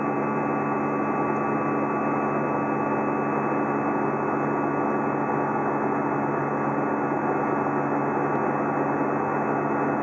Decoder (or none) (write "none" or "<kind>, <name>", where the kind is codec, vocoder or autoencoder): none